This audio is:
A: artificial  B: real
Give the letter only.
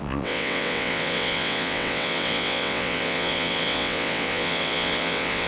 A